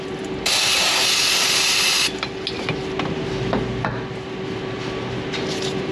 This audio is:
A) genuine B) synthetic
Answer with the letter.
A